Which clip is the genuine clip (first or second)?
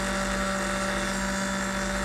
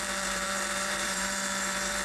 first